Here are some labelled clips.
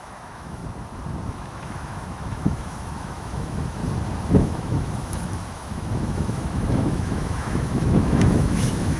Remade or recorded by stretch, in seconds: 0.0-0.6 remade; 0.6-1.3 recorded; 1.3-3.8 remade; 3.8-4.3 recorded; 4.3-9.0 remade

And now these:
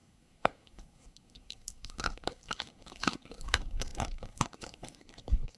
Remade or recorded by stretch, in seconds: 0.0-5.6 remade

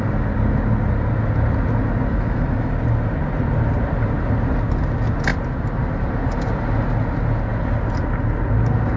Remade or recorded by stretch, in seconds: 0.0-2.1 recorded; 2.1-2.7 remade; 2.7-9.0 recorded